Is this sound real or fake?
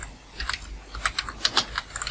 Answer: real